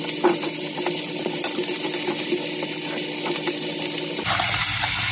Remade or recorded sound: recorded